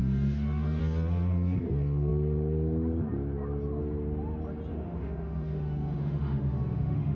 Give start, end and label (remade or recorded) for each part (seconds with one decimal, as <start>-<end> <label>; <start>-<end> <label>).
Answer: 0.0-0.8 remade; 0.8-4.7 recorded; 4.7-7.2 remade